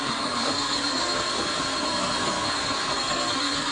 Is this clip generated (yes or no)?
yes